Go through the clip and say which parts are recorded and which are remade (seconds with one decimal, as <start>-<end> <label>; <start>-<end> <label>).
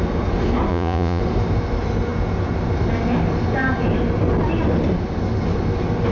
0.0-0.7 recorded; 0.7-1.2 remade; 1.2-6.1 recorded